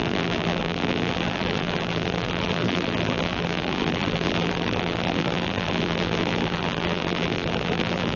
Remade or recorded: remade